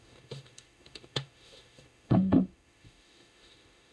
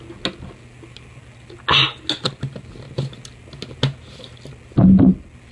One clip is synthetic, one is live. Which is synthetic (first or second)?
first